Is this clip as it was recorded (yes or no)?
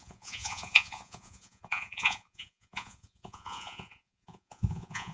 no